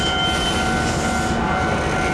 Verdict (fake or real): real